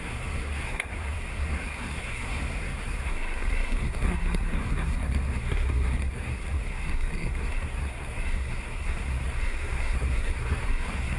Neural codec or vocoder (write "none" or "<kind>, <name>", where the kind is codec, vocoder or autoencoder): codec, SNAC